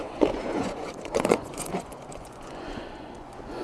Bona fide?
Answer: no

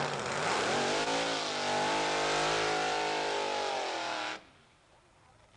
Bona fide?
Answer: yes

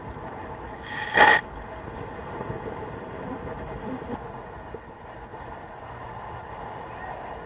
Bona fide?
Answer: yes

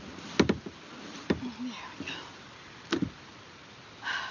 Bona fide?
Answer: yes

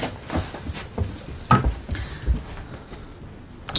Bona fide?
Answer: yes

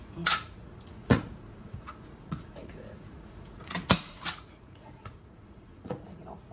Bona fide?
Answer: no